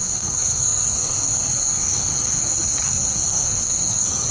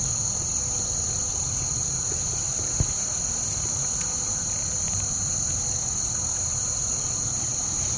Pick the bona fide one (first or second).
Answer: second